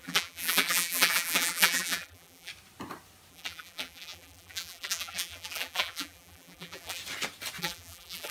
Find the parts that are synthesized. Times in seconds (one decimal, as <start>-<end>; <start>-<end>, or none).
0.0-2.5; 3.3-7.0; 7.6-8.3